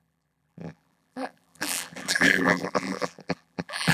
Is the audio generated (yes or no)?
yes